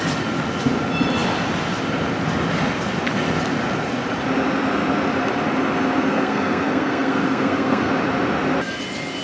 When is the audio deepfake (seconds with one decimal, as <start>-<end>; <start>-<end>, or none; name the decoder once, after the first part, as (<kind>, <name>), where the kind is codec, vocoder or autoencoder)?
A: 6.1-7.9 (codec, SNAC)